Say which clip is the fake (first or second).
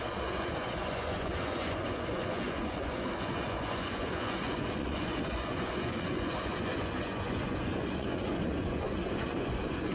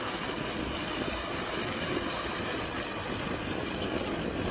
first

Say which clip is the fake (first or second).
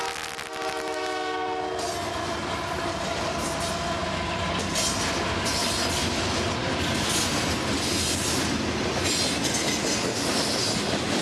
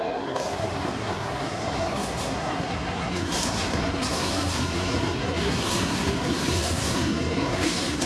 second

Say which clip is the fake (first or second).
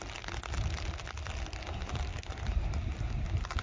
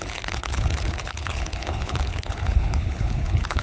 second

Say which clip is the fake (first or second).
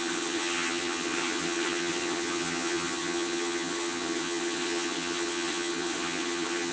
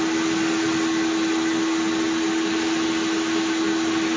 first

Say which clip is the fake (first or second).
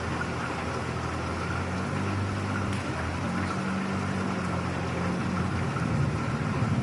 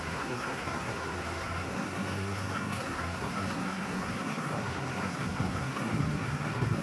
second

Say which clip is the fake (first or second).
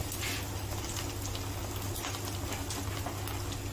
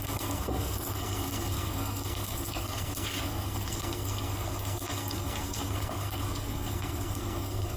second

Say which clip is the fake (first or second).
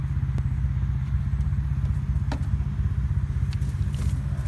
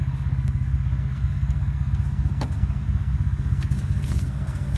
second